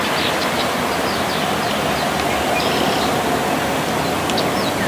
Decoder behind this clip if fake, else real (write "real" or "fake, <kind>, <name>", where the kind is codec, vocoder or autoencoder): real